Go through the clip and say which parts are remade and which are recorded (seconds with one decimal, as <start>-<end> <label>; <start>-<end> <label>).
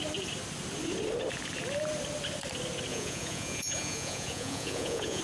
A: 0.0-2.9 recorded; 2.9-5.2 remade